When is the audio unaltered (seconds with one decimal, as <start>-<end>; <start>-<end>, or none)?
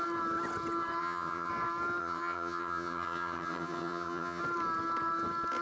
0.0-1.0; 1.5-2.0; 4.4-5.6